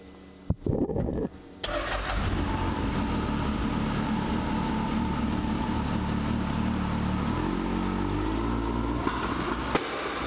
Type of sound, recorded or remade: recorded